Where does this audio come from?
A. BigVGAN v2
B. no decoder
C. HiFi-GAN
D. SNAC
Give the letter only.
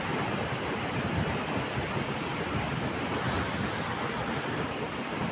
A